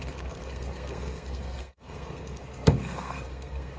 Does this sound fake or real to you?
fake